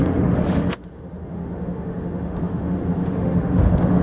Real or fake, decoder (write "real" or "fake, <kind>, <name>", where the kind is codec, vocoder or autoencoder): fake, autoencoder, DAC-VAE